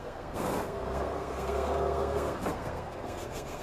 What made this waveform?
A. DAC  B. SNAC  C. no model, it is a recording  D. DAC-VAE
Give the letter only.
B